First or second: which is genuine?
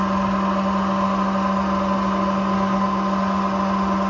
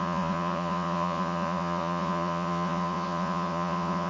first